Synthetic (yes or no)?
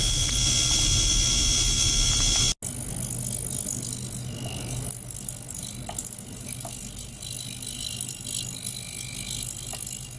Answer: no